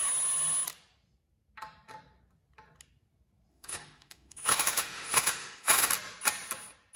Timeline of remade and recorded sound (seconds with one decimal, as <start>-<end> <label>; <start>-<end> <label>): 0.0-3.5 recorded; 3.5-5.9 remade; 5.9-7.0 recorded